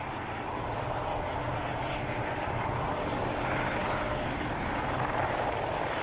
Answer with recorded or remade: recorded